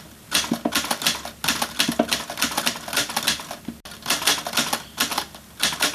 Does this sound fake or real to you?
real